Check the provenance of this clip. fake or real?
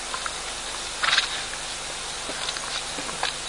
real